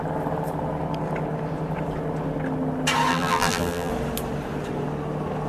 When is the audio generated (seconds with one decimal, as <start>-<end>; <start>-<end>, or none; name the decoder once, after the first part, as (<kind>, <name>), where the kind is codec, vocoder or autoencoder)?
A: 3.1-3.9 (vocoder, BigVGAN v2)